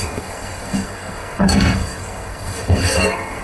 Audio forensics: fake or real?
fake